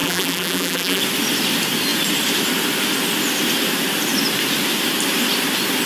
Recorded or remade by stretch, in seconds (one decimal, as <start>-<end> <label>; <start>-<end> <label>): 0.0-1.0 remade; 1.0-5.9 recorded